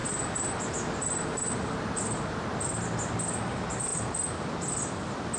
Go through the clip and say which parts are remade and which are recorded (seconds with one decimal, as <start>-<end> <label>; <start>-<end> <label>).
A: 0.0-5.4 recorded